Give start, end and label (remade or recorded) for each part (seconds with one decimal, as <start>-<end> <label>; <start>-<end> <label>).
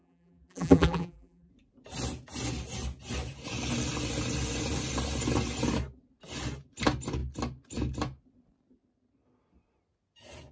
0.0-1.5 remade; 1.5-10.5 recorded